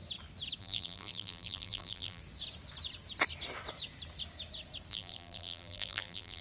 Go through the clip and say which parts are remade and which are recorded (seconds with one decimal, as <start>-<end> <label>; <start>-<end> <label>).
0.0-0.6 recorded; 0.6-2.2 remade; 2.2-4.9 recorded; 4.9-6.4 remade